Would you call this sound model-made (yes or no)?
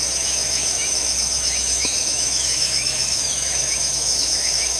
yes